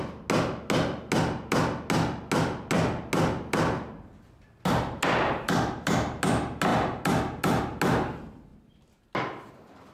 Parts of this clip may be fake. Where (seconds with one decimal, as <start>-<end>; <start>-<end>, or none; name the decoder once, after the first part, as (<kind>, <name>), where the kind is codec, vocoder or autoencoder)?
none